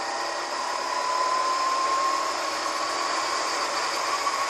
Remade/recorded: recorded